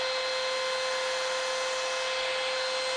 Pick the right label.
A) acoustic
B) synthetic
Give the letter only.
A